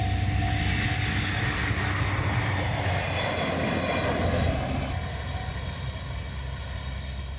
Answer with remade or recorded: recorded